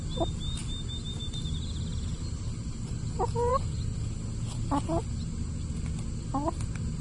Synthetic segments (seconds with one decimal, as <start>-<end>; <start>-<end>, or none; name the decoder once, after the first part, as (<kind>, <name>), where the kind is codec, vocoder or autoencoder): none